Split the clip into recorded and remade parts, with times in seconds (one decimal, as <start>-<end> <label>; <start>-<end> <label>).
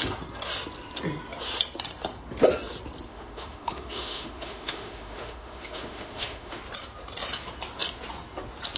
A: 0.0-3.1 recorded; 3.1-6.6 remade; 6.6-8.8 recorded